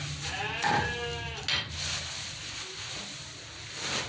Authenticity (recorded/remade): recorded